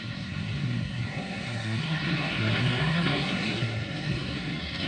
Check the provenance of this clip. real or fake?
fake